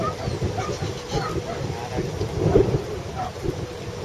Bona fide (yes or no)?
yes